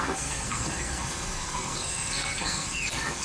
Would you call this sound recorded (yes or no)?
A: no